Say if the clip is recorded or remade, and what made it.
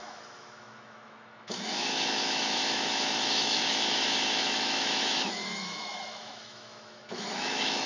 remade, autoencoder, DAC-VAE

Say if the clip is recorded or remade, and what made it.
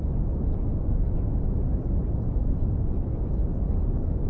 recorded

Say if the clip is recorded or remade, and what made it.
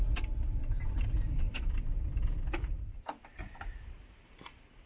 remade, vocoder, BigVGAN v2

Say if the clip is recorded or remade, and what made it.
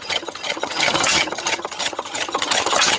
remade, vocoder, HiFi-GAN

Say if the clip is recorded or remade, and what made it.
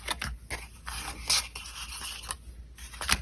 recorded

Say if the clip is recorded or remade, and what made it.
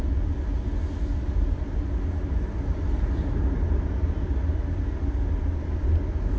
recorded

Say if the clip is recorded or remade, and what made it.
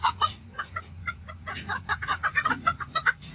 remade, vocoder, Vocos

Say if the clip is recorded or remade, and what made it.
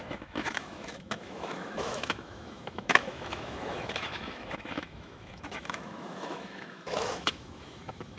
remade, autoencoder, DAC-VAE